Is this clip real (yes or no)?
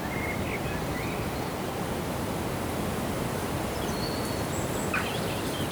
yes